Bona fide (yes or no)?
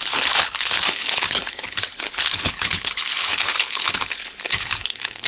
no